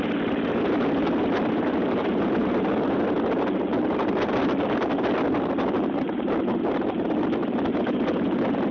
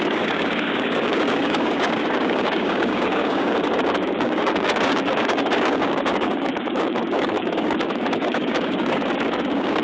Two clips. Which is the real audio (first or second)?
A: first